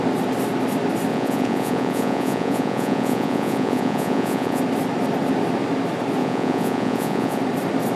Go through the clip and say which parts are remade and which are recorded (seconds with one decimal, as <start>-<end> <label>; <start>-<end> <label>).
0.0-1.1 recorded; 1.1-4.6 remade; 4.6-6.2 recorded; 6.2-7.4 remade; 7.4-8.0 recorded